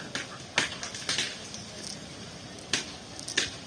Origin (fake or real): real